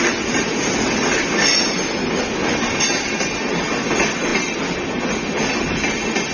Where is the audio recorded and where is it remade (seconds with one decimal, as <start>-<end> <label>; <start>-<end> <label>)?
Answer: 0.0-6.3 recorded